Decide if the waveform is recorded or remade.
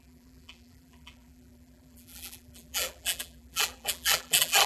remade